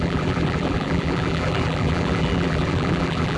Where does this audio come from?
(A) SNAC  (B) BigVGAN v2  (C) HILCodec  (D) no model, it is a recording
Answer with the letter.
B